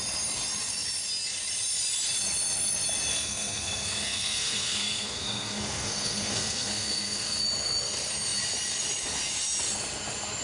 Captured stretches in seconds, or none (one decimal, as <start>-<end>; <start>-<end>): 0.0-3.1; 7.4-10.4